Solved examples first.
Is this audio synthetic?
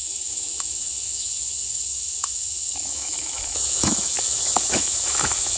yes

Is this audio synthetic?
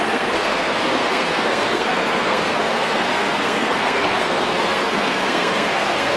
yes